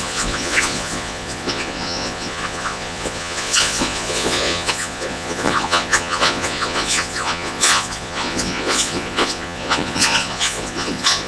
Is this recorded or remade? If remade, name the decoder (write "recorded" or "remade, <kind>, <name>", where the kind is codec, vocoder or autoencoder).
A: remade, vocoder, Vocos